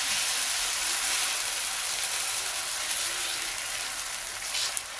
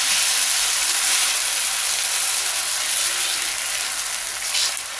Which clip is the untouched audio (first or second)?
second